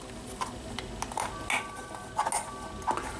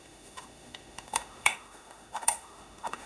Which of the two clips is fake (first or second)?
second